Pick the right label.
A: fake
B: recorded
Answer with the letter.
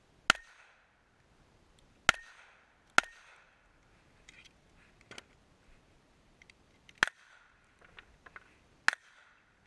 B